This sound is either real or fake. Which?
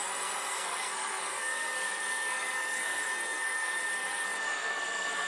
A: fake